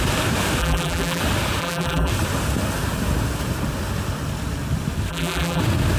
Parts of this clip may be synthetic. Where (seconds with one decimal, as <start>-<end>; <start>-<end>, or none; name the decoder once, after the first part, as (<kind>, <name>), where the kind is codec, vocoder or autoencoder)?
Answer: 0.6-1.2 (vocoder, BigVGAN v2); 1.6-2.1; 5.1-5.6